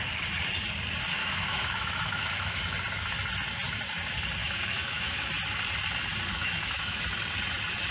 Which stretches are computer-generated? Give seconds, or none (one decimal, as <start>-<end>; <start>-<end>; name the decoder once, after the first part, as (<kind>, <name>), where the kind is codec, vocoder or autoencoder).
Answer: 1.2-2.6 (autoencoder, DAC-VAE); 4.4-5.3; 6.3-7.0